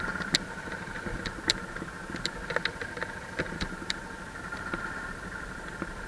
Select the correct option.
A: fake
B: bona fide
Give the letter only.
B